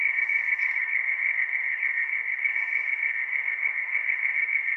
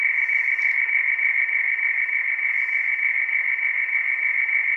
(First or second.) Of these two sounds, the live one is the second